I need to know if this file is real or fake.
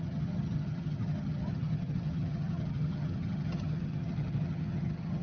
fake